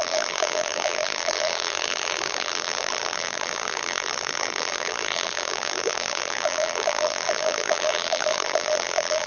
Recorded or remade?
remade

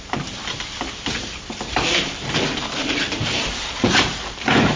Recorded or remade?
remade